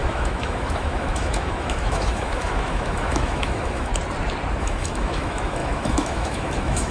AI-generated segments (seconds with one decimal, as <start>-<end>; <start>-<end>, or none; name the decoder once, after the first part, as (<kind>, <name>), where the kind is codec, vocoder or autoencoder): 0.0-3.9 (autoencoder, DAC-VAE); 4.6-6.9